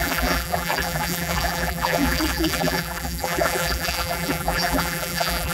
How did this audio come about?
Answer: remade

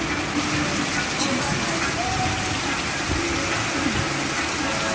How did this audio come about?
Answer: recorded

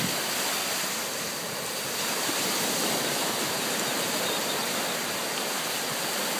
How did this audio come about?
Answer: recorded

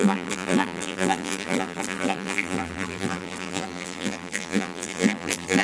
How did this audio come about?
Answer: remade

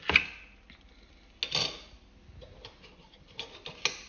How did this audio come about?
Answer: recorded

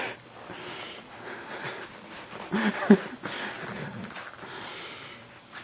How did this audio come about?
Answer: remade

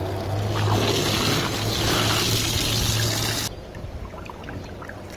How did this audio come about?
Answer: recorded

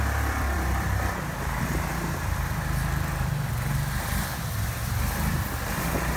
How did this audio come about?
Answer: remade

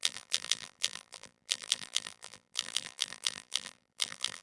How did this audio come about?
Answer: remade